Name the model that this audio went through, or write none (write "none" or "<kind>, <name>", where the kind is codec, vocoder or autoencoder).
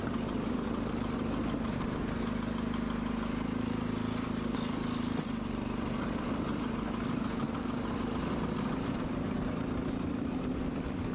vocoder, BigVGAN v2